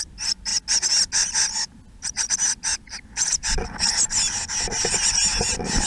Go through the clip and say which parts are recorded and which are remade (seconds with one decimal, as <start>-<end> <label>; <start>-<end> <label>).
0.0-5.9 recorded